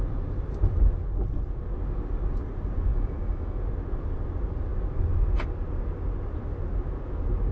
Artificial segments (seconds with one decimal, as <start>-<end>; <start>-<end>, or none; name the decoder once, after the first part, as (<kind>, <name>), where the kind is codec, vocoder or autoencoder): 2.9-3.6 (autoencoder, DAC-VAE)